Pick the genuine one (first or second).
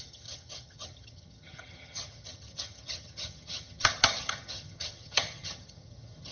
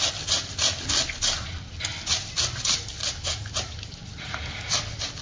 second